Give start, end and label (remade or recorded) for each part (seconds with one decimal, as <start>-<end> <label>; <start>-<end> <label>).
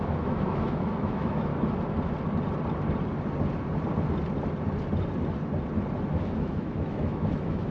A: 0.0-1.5 remade; 1.5-6.1 recorded; 6.1-7.7 remade